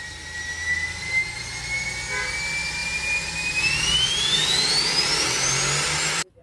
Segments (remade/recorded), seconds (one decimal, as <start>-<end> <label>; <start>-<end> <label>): 0.0-6.4 recorded